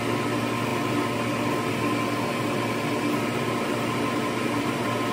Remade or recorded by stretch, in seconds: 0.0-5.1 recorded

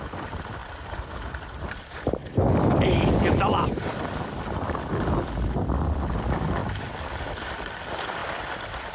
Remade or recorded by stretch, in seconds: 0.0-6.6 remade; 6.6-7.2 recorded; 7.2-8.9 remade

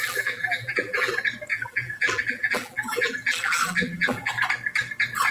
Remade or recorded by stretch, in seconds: 0.0-1.1 remade; 1.1-1.5 recorded; 1.5-4.3 remade; 4.3-5.3 recorded

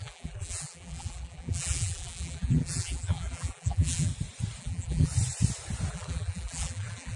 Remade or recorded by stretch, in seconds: 0.0-4.1 remade; 4.1-4.6 recorded; 4.6-5.1 remade; 5.1-5.9 recorded; 5.9-7.2 remade